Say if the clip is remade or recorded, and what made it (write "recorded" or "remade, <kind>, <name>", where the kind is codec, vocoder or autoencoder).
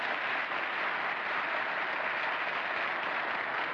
recorded